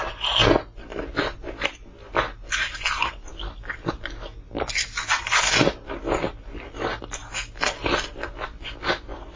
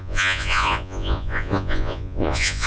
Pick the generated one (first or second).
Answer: second